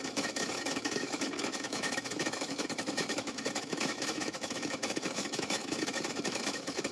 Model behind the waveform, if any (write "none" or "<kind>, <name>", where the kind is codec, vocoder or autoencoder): autoencoder, DAC-VAE